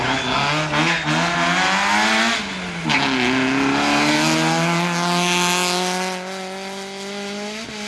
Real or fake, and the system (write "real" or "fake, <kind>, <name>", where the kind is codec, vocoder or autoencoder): real